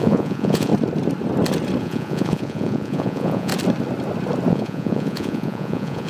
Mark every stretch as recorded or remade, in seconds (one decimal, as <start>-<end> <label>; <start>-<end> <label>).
0.0-0.7 remade; 0.7-1.8 recorded; 1.8-3.5 remade; 3.5-4.5 recorded; 4.5-6.1 remade